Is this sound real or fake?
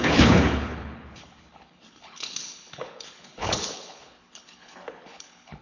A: fake